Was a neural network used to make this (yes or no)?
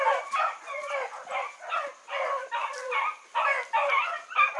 no